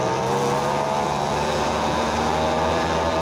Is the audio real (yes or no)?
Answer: no